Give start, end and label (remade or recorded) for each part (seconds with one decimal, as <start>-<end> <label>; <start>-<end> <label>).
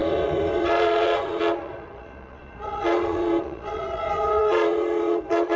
0.0-5.6 remade